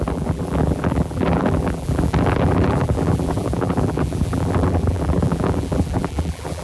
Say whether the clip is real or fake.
fake